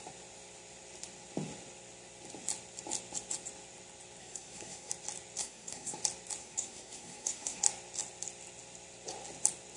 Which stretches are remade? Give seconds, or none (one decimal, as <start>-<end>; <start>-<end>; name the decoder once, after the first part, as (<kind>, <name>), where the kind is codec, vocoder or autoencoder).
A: 4.2-4.9 (codec, SNAC); 5.4-6.0; 6.4-7.6